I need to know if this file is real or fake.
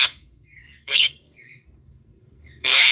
fake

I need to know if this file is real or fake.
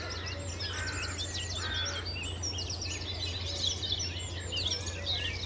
real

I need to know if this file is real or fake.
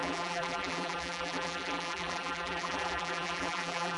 fake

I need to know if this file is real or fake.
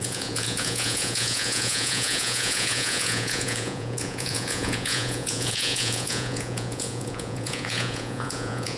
fake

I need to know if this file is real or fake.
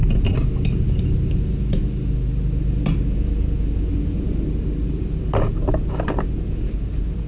real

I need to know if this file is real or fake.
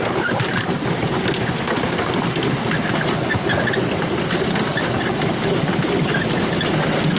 real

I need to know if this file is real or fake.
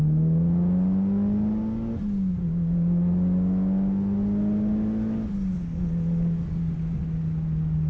real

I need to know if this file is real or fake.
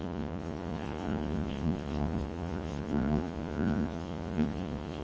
fake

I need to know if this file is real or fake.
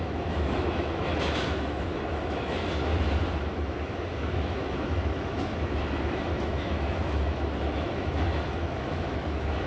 fake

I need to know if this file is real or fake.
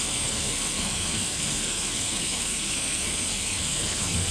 fake